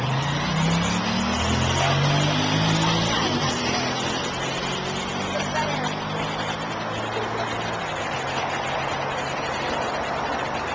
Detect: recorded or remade recorded